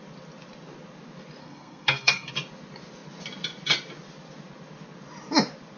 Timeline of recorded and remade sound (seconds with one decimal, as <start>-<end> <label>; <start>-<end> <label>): 0.0-1.4 recorded; 1.4-2.3 remade; 2.3-5.8 recorded